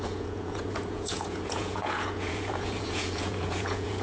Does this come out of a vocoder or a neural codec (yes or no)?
yes